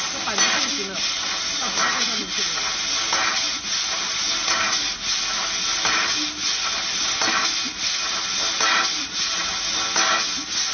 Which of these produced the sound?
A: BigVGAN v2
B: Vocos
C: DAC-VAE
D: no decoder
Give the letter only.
D